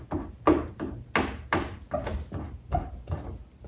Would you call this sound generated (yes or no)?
no